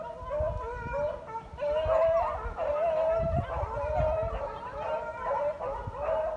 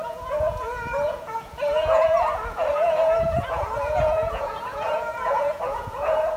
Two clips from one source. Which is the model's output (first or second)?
second